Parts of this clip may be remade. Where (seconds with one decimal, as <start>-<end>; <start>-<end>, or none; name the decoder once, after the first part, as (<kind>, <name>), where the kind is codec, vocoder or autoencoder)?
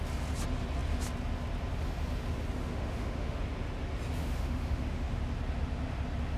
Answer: 2.6-3.4 (autoencoder, DAC-VAE); 4.2-5.2